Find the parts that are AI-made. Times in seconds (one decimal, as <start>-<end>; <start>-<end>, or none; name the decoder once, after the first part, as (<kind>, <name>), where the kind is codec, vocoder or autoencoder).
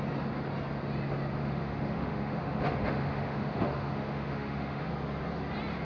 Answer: 1.4-4.9 (autoencoder, DAC-VAE)